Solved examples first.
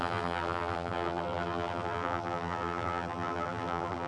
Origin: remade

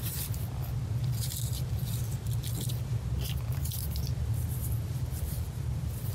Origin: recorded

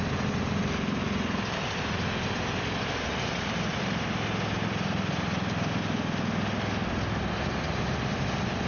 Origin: recorded